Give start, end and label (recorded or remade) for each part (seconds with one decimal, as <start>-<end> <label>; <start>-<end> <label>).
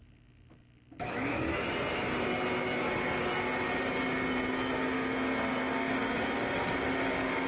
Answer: 0.0-7.5 recorded